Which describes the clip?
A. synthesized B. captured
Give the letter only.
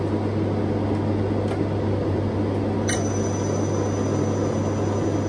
B